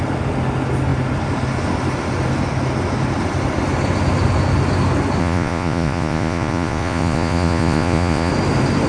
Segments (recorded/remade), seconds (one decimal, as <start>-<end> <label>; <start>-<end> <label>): 0.0-5.2 recorded; 5.2-8.3 remade; 8.3-8.9 recorded